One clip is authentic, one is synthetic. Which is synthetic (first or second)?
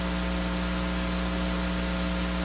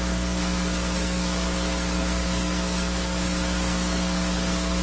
second